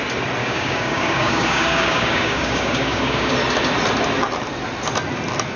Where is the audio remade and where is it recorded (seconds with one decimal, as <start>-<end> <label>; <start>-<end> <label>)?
0.0-0.4 recorded; 0.4-3.3 remade; 3.3-5.6 recorded